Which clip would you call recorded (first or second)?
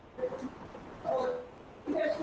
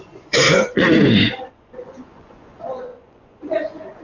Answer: first